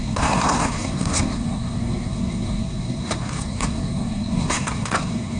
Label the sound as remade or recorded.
remade